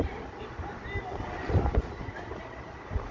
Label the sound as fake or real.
real